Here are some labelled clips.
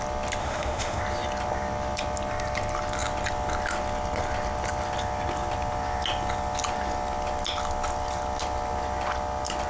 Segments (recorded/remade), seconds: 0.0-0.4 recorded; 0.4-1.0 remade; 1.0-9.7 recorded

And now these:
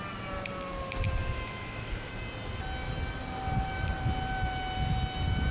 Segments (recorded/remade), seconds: 0.0-1.2 recorded; 1.2-2.1 remade; 2.1-5.5 recorded